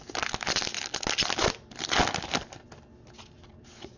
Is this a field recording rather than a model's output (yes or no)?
yes